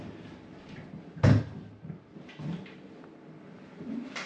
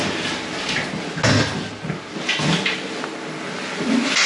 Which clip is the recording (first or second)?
second